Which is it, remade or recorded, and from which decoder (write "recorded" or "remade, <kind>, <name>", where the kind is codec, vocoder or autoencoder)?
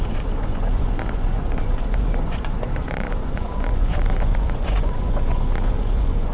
remade, vocoder, Vocos